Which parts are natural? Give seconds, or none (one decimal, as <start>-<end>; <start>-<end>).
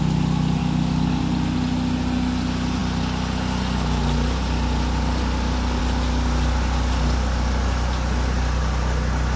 0.0-0.6; 1.2-9.4